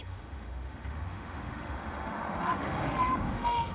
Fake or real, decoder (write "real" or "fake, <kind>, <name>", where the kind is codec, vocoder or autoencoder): fake, autoencoder, DAC-VAE